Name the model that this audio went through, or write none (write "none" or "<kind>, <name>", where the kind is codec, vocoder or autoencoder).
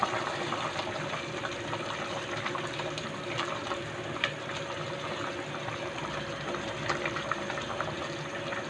vocoder, BigVGAN v2